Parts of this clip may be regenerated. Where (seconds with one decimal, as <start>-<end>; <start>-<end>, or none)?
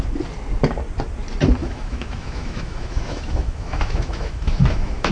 1.6-5.1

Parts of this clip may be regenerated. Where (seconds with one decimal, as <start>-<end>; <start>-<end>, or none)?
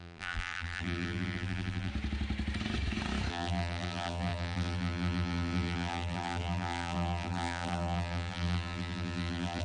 0.0-1.9; 3.3-9.6